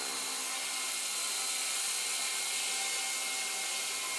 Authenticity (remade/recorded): recorded